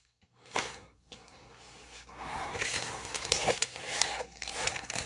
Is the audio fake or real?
fake